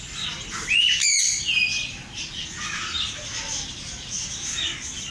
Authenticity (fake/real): real